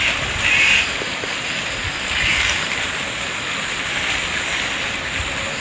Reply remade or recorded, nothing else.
recorded